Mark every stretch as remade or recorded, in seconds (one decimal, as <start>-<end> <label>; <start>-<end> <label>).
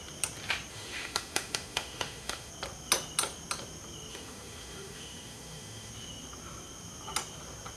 0.0-0.7 recorded; 0.7-2.5 remade; 2.5-4.1 recorded; 4.1-5.9 remade; 5.9-7.8 recorded